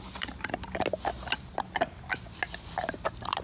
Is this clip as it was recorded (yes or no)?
yes